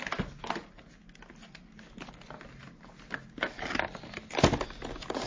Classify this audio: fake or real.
real